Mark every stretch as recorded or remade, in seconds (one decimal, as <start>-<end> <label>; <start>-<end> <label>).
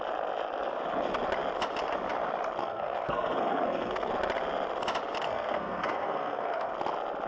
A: 0.0-2.6 recorded; 2.6-4.1 remade; 4.1-5.2 recorded; 5.2-6.7 remade; 6.7-7.3 recorded